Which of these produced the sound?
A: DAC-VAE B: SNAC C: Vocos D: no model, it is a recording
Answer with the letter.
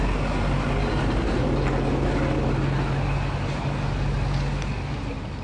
D